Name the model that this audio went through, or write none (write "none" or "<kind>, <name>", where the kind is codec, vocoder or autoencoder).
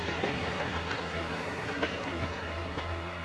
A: codec, SNAC